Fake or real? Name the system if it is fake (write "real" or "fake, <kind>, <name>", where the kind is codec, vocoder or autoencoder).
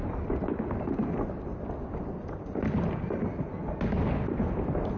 real